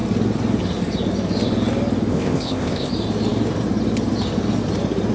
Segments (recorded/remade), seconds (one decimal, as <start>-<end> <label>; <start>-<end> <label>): 0.0-2.1 recorded; 2.1-2.9 remade; 2.9-5.1 recorded